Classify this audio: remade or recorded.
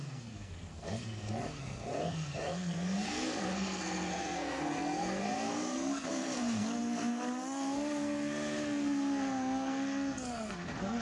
remade